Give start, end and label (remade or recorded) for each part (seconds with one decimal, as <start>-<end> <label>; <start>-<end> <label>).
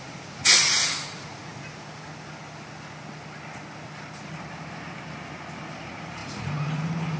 0.0-1.5 remade; 1.5-5.8 recorded; 5.8-7.2 remade